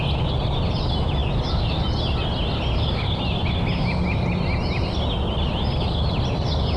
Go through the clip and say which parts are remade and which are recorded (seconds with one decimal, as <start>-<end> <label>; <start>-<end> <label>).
0.0-6.8 recorded

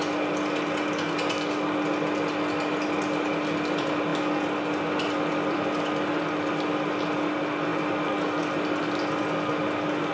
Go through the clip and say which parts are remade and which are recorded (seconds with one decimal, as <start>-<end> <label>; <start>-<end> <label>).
0.0-10.1 recorded

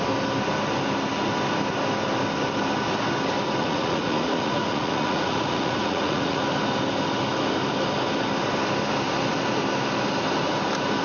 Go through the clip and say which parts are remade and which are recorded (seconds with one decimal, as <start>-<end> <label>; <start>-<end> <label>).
0.0-3.6 recorded; 3.6-6.4 remade; 6.4-11.0 recorded

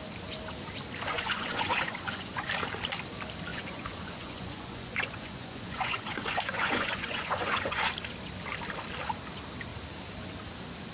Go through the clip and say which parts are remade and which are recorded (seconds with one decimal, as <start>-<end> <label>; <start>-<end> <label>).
0.0-1.1 recorded; 1.1-2.5 remade; 2.5-3.5 recorded; 3.5-7.9 remade; 7.9-10.9 recorded

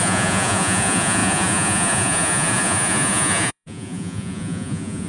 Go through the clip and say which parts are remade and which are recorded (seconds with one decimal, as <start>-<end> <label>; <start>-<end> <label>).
0.0-5.1 remade

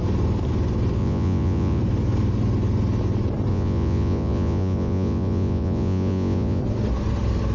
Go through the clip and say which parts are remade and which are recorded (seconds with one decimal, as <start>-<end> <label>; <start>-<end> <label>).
0.0-1.0 recorded; 1.0-1.8 remade; 1.8-3.5 recorded; 3.5-6.6 remade; 6.6-7.5 recorded

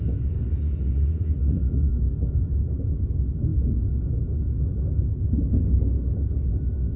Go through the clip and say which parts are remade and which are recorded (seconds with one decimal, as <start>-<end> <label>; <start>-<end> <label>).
0.0-0.4 recorded; 0.4-1.9 remade; 1.9-7.0 recorded

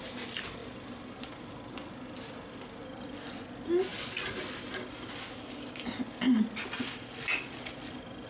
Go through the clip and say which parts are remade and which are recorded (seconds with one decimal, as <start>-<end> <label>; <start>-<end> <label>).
0.0-8.3 recorded